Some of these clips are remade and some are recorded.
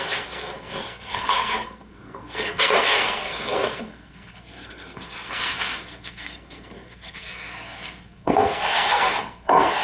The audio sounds remade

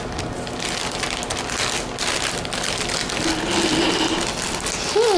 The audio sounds recorded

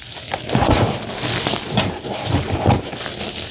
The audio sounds remade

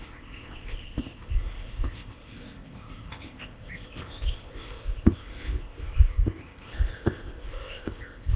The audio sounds remade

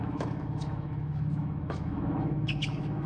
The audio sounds remade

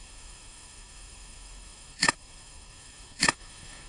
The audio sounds remade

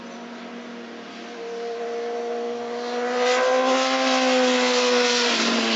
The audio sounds recorded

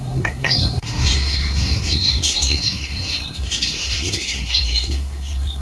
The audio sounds remade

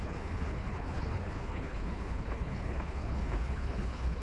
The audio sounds remade